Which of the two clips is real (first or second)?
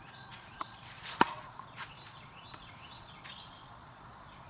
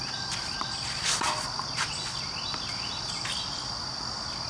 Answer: second